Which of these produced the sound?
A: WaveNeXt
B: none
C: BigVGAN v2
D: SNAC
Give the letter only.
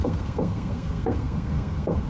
D